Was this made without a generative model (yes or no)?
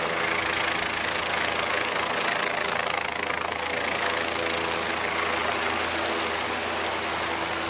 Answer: yes